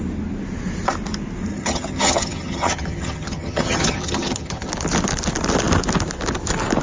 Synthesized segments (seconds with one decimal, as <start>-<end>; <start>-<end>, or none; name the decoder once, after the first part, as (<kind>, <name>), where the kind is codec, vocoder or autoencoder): 1.5-4.7 (vocoder, HiFi-GAN)